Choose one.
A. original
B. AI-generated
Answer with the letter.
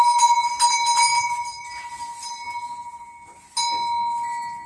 A